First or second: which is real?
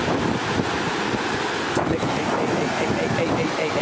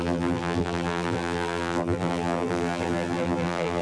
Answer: first